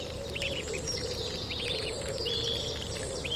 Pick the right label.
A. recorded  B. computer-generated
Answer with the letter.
B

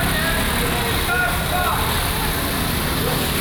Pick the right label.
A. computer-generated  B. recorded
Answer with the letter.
B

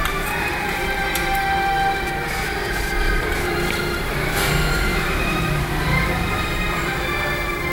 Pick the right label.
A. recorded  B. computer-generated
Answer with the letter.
B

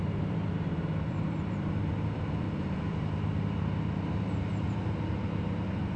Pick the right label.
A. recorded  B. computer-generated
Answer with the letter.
B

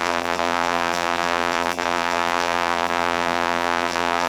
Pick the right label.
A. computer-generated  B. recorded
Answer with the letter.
A